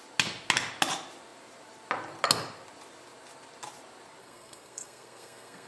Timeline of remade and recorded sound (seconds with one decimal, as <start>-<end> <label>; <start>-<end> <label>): 0.0-4.2 recorded; 4.2-5.7 remade